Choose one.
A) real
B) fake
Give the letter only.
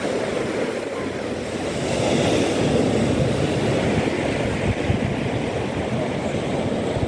A